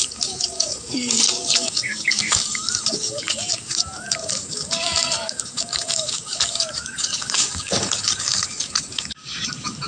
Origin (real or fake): fake